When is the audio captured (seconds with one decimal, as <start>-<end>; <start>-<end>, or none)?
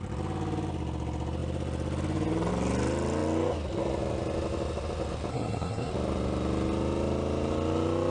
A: 0.0-5.3; 5.9-8.1